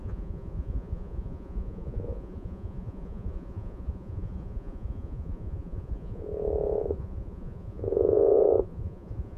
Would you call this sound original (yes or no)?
no